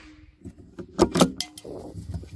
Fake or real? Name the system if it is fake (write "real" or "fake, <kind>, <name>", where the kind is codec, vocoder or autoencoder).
real